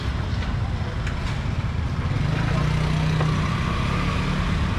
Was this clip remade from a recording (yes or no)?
no